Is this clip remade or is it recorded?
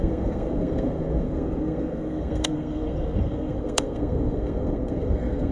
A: remade